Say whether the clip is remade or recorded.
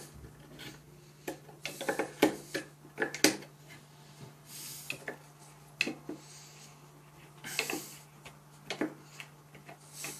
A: recorded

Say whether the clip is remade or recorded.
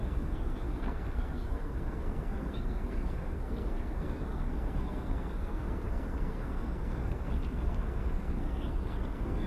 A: remade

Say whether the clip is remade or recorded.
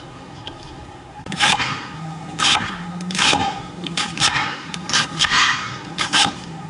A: remade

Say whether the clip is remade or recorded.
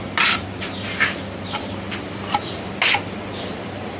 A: recorded